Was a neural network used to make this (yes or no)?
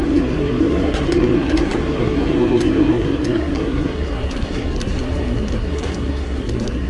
yes